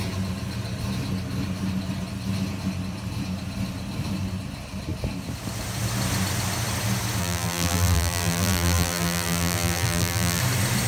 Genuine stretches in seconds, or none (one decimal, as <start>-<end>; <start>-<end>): 0.0-7.2; 10.4-10.9